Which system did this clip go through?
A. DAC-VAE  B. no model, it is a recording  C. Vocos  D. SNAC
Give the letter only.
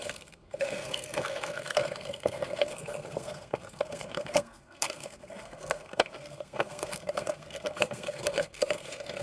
D